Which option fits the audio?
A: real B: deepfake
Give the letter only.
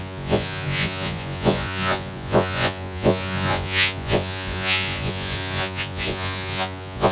B